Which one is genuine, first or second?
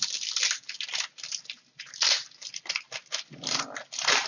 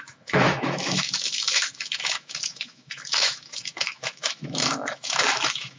first